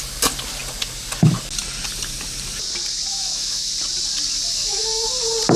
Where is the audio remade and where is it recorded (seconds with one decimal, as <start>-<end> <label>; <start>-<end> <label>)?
0.0-3.1 recorded; 3.1-3.7 remade; 3.7-4.5 recorded; 4.5-5.1 remade; 5.1-5.6 recorded